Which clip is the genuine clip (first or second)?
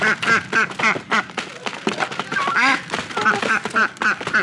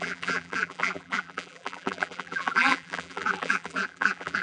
first